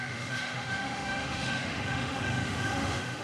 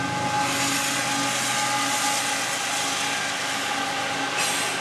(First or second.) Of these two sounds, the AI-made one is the first